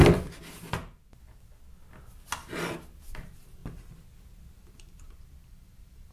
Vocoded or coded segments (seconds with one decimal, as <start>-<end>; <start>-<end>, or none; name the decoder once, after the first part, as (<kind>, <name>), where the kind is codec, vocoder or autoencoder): 3.0-3.6 (vocoder, BigVGAN v2); 4.6-6.1